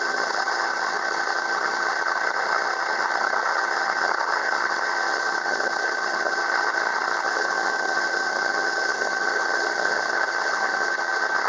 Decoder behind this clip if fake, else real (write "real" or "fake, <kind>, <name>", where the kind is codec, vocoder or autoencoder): fake, vocoder, HiFi-GAN